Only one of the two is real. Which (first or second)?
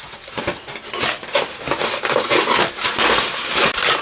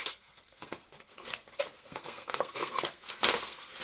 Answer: first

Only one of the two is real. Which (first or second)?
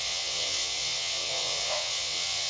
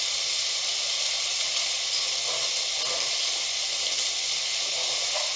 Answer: second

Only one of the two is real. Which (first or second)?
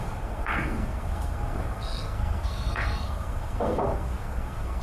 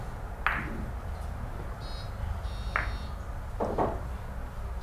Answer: second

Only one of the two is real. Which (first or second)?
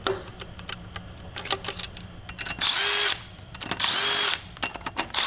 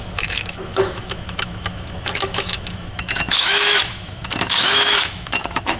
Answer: first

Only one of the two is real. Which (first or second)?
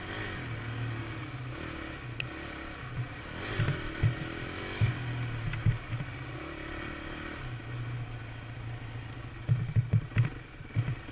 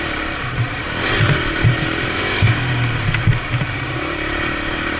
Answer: first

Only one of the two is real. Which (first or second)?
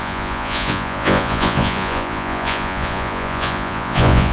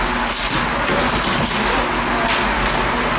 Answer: second